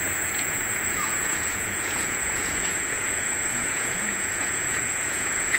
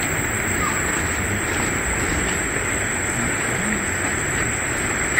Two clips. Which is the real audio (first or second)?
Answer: second